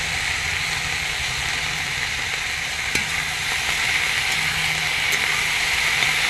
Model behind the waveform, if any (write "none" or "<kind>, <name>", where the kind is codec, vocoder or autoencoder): none